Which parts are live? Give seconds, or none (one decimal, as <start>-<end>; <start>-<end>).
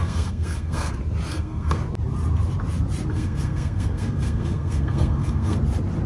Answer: 0.9-1.3; 1.8-3.1; 5.6-6.1